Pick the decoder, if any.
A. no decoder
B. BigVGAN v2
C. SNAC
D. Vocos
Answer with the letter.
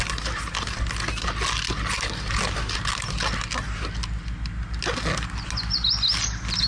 A